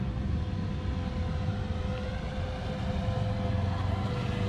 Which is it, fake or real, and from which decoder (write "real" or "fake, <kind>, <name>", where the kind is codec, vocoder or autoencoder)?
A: real